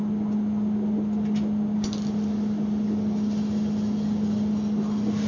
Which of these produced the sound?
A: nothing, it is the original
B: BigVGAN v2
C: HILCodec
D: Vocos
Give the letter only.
A